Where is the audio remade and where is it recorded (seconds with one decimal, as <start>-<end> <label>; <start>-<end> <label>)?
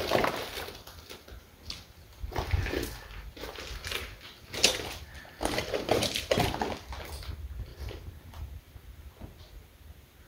0.0-4.6 recorded; 4.6-6.3 remade; 6.3-7.7 recorded; 7.7-9.0 remade; 9.0-10.3 recorded